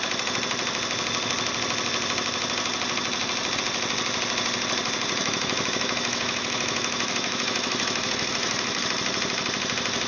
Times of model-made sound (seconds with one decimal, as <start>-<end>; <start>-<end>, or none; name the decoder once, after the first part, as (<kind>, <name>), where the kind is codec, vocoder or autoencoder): 5.2-8.8 (autoencoder, DAC-VAE)